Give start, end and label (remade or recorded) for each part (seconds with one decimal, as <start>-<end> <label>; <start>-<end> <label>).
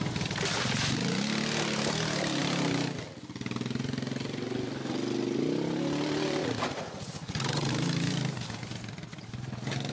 0.0-6.4 recorded; 6.4-7.7 remade; 7.7-9.9 recorded